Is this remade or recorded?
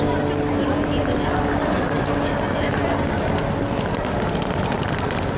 recorded